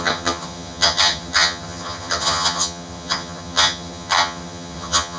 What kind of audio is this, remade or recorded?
remade